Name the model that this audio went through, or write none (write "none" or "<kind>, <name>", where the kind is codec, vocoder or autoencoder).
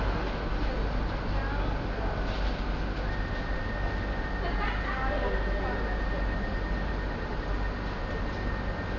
none